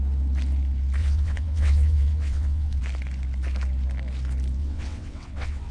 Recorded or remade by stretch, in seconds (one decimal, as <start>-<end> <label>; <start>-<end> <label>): 0.0-1.0 recorded; 1.0-2.8 remade; 2.8-4.6 recorded; 4.6-5.7 remade